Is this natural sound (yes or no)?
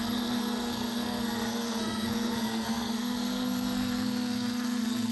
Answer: no